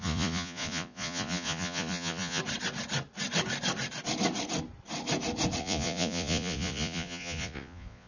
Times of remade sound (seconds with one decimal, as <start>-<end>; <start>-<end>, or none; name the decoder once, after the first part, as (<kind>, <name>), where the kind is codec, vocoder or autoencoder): 0.0-2.4 (vocoder, Vocos); 5.6-8.1